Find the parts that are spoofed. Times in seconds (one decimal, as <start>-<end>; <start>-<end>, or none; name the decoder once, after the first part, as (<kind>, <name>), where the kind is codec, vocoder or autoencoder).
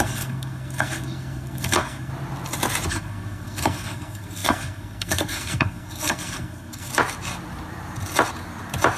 0.0-2.1 (codec, SNAC); 2.9-6.9